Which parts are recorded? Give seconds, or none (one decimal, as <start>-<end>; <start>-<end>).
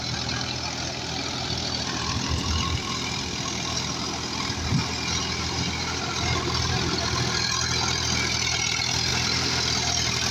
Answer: 0.0-10.3